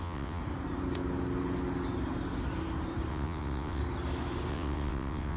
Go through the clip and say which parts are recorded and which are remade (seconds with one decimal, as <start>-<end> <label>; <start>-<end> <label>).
0.0-0.4 remade; 0.4-3.1 recorded; 3.1-3.8 remade; 3.8-4.5 recorded; 4.5-5.4 remade